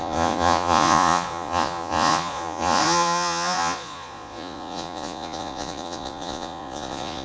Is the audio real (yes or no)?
no